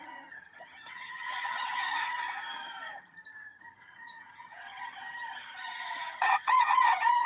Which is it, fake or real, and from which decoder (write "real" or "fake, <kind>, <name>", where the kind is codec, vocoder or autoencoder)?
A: fake, vocoder, HiFi-GAN